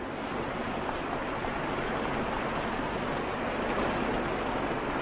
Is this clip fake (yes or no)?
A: no